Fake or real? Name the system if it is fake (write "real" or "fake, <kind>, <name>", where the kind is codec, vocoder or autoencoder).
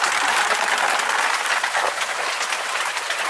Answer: real